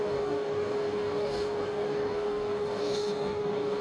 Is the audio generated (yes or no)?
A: yes